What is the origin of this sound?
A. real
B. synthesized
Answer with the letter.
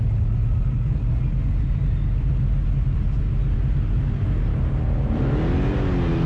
A